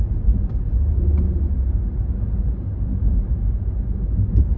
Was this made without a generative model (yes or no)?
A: yes